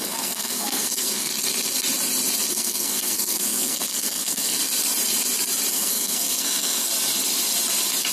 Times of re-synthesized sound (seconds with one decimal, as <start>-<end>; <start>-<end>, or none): 0.0-1.3; 2.5-4.6; 5.7-6.9